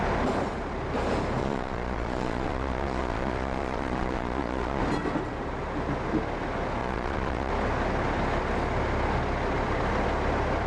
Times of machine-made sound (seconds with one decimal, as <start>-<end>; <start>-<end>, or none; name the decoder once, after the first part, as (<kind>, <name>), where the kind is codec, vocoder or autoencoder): 1.4-4.8 (vocoder, Vocos); 6.8-7.5